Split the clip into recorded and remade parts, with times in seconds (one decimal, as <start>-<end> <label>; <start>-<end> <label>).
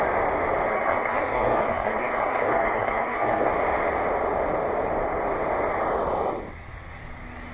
0.0-0.7 recorded; 0.7-3.5 remade; 3.5-7.5 recorded